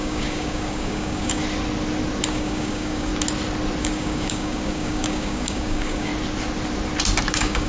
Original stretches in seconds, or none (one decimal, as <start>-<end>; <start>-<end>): 1.4-2.3; 3.1-3.8; 6.1-7.3